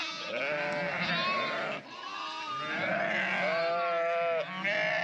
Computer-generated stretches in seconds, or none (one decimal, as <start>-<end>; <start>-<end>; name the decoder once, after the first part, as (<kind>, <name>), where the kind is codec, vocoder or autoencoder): none